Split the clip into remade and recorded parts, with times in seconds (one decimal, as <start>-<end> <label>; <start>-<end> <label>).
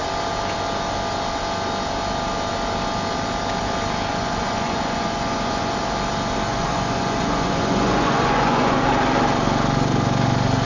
0.0-4.1 recorded; 4.1-5.7 remade; 5.7-6.5 recorded; 6.5-8.8 remade; 8.8-10.6 recorded